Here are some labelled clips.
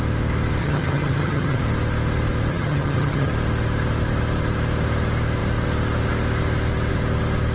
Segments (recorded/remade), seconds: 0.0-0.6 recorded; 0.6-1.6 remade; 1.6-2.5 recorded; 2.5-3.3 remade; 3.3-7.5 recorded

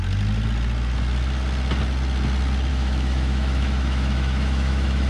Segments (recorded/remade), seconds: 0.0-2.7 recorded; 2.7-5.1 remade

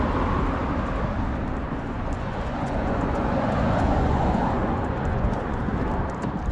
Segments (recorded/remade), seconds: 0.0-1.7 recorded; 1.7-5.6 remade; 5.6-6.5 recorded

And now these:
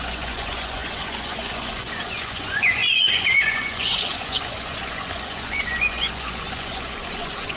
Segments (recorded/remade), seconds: 0.0-7.6 remade

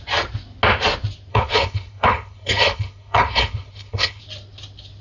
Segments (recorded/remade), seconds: 0.0-1.3 recorded; 1.3-4.2 remade; 4.2-5.0 recorded

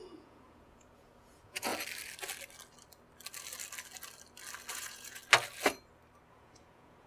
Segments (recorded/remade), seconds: 0.0-1.7 remade; 1.7-4.7 recorded; 4.7-5.2 remade; 5.2-6.3 recorded; 6.3-7.1 remade